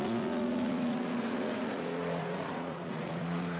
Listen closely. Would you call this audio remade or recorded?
remade